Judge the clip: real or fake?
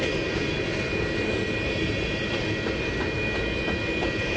real